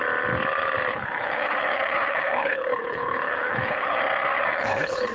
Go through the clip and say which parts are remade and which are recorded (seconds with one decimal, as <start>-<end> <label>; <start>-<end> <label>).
0.0-0.9 recorded; 0.9-4.0 remade; 4.0-4.5 recorded; 4.5-5.1 remade